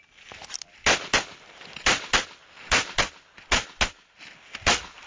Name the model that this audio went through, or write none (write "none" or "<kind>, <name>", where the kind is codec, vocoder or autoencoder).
none